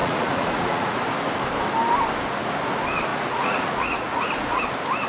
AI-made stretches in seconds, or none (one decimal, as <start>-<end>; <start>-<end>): 0.0-1.0; 3.1-4.6